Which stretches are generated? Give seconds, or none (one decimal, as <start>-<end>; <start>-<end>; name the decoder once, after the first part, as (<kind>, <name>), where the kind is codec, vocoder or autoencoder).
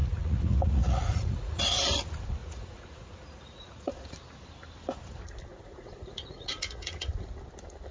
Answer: 0.0-1.6 (vocoder, Vocos); 2.4-4.1; 5.5-7.1